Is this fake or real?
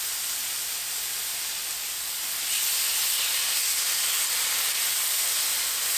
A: real